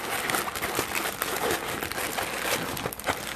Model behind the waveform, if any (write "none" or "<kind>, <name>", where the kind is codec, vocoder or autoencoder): none